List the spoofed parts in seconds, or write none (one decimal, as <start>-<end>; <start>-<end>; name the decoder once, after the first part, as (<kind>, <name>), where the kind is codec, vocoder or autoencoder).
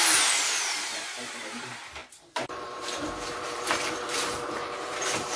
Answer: 0.0-5.4 (vocoder, BigVGAN v2)